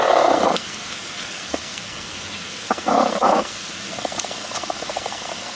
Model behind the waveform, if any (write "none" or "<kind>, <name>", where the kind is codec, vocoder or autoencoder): codec, SNAC